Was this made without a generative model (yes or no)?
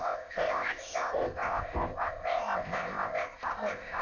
no